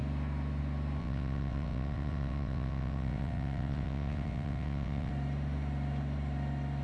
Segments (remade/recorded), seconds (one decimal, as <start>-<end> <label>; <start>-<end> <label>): 0.0-1.0 recorded; 1.0-5.1 remade; 5.1-6.8 recorded